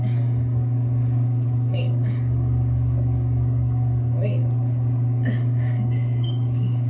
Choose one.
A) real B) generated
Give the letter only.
B